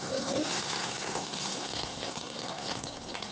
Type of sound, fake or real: fake